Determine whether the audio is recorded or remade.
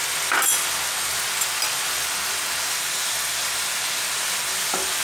recorded